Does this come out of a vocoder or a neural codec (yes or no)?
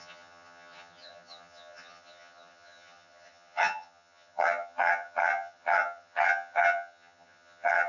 yes